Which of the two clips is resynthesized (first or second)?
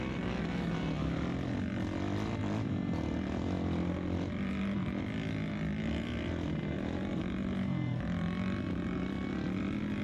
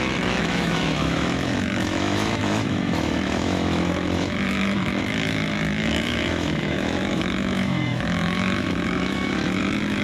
second